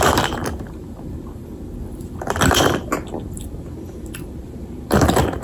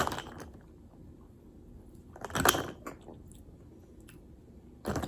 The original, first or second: second